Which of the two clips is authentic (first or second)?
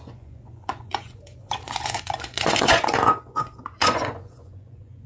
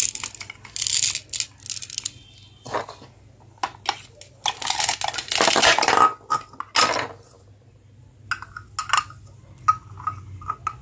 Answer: second